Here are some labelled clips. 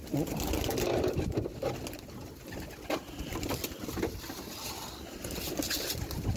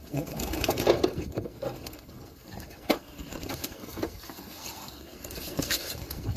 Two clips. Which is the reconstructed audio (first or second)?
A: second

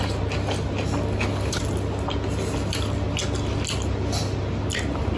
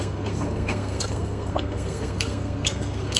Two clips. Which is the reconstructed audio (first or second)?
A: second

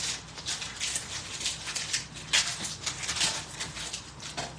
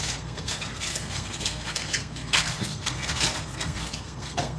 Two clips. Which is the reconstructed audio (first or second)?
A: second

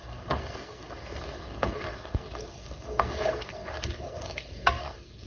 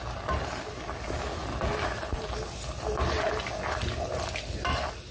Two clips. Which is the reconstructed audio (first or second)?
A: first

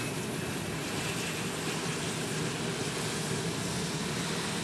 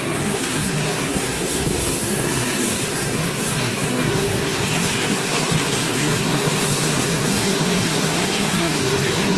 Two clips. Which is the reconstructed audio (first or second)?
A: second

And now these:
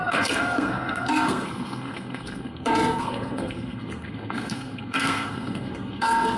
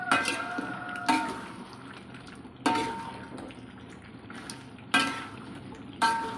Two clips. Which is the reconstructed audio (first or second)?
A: first